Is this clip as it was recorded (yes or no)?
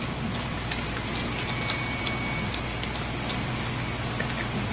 yes